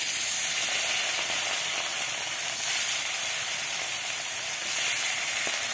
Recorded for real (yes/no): no